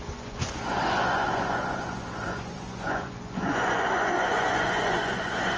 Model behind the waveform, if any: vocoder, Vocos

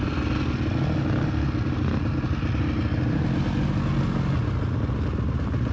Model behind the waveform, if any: none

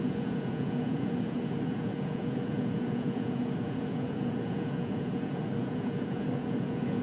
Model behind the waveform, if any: vocoder, Vocos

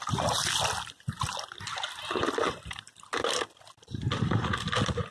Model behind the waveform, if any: none